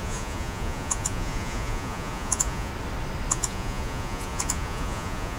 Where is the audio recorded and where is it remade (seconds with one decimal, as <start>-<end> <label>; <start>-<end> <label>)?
0.0-2.7 remade; 2.7-3.3 recorded; 3.3-5.4 remade